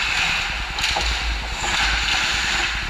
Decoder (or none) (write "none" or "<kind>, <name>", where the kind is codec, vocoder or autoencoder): none